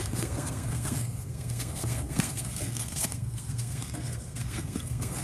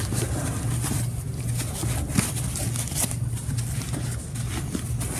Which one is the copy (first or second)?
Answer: first